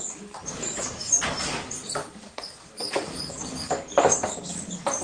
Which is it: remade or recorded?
remade